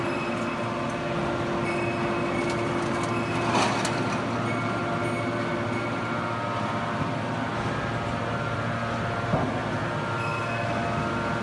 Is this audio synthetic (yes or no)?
no